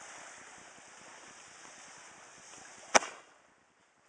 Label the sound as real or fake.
real